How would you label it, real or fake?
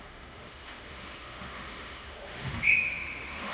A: fake